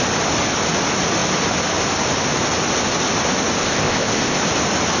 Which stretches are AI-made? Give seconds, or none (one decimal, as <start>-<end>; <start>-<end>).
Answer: 3.6-4.4